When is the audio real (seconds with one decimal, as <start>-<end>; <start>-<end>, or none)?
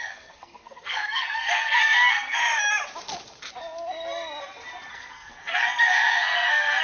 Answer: 2.4-4.9